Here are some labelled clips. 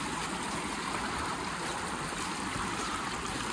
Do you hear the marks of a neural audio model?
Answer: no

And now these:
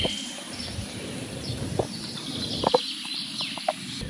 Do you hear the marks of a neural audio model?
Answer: yes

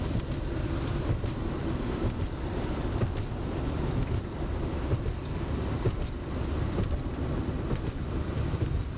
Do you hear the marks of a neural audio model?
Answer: yes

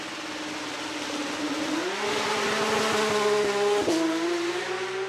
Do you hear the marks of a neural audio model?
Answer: no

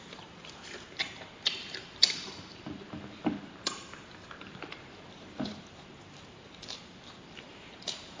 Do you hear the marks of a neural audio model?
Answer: yes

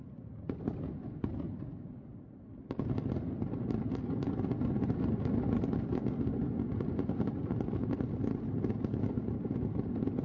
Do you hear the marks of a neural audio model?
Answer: no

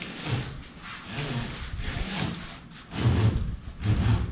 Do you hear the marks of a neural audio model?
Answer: no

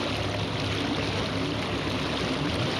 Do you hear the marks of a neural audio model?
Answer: no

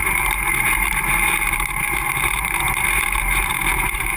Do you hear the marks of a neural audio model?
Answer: yes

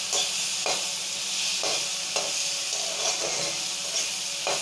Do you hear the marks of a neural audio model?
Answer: no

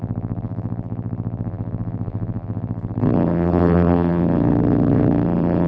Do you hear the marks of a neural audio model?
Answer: yes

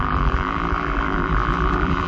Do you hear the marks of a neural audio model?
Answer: yes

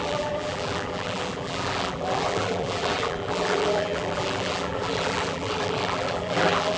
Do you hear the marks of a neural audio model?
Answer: yes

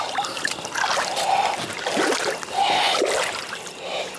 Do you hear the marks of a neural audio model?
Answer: no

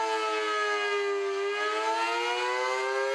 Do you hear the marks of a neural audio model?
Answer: no